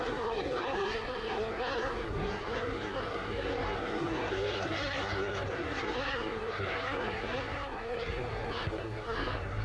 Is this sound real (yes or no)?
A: no